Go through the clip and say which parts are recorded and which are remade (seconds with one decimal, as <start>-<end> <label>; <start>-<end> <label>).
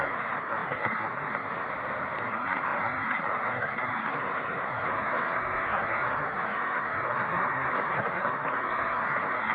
0.0-1.7 remade; 1.7-2.2 recorded; 2.2-9.5 remade